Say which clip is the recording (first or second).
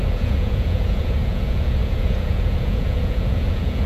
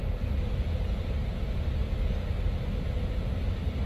second